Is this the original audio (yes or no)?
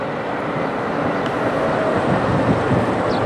yes